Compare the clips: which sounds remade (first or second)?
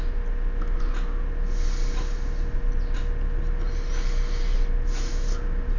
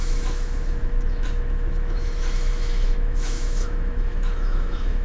second